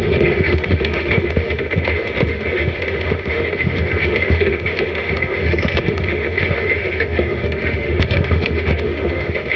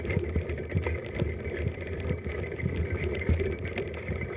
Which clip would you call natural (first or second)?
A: second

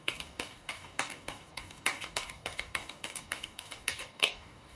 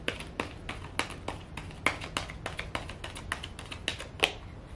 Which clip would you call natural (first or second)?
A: second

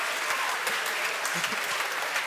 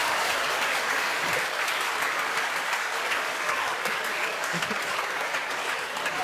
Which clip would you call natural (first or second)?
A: first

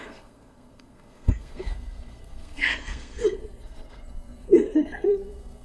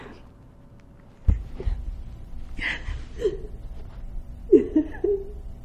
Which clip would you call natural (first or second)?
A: second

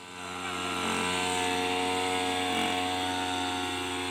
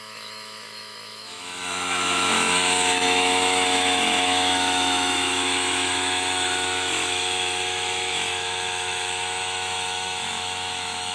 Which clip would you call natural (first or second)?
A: first